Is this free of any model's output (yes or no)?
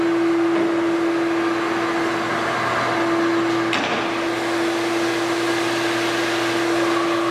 yes